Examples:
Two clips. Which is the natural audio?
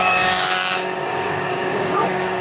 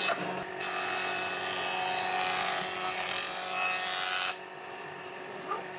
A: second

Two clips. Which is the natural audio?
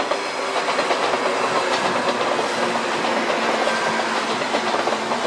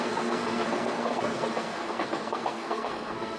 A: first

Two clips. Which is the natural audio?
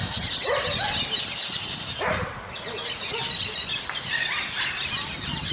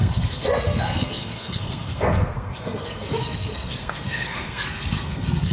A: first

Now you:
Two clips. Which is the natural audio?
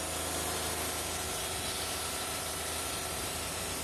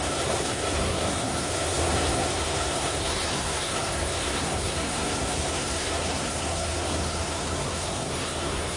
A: first